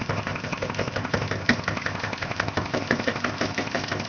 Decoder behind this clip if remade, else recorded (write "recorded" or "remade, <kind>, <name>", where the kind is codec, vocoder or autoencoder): remade, codec, ZipCodec